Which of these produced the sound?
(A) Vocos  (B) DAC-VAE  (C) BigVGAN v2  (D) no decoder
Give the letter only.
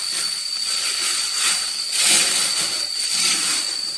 D